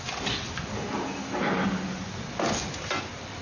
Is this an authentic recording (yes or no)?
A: yes